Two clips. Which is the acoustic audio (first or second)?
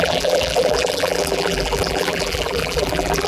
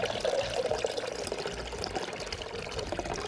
second